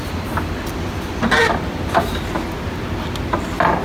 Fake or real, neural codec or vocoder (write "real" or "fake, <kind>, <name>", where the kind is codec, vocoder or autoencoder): real